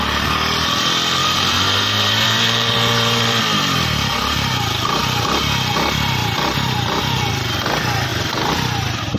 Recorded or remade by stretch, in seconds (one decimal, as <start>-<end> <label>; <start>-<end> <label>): 0.0-1.2 recorded; 1.2-3.4 remade; 3.4-6.2 recorded; 6.2-7.0 remade; 7.0-8.1 recorded; 8.1-9.2 remade